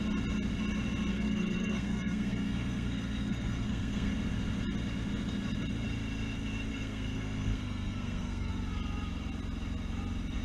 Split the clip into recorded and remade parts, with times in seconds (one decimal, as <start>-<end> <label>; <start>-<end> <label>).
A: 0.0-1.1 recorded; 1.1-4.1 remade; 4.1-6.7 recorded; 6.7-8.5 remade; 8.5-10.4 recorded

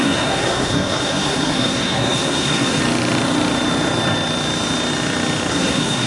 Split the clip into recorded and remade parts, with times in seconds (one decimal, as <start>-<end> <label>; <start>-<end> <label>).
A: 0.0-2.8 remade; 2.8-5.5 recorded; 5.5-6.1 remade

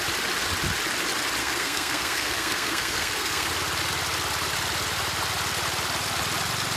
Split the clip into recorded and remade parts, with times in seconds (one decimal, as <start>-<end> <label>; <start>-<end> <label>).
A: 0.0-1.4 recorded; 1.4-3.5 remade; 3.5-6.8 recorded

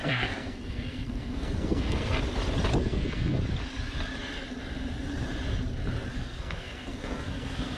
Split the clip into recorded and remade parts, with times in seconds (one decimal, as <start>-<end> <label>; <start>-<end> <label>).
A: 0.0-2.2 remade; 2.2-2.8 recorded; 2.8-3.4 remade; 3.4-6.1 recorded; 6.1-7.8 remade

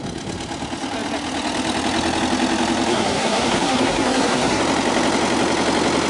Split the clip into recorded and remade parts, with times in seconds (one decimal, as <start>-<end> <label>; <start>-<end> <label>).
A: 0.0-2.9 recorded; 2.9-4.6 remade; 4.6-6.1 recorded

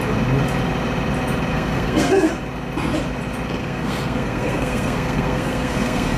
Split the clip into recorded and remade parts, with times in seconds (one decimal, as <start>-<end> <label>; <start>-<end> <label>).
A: 0.0-1.5 recorded; 1.5-2.3 remade; 2.3-3.6 recorded; 3.6-6.2 remade

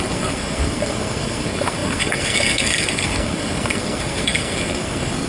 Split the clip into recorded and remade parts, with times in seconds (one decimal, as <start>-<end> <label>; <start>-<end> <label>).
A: 0.0-5.3 remade

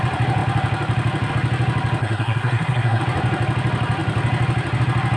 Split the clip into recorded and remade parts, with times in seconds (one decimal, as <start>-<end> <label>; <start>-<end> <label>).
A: 0.0-2.0 recorded; 2.0-3.0 remade; 3.0-5.2 recorded